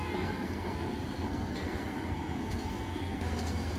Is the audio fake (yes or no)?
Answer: yes